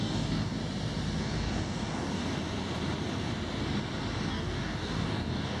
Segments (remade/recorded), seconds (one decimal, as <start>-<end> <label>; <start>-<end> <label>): 0.0-0.6 remade; 0.6-1.2 recorded; 1.2-2.2 remade; 2.2-4.3 recorded; 4.3-5.6 remade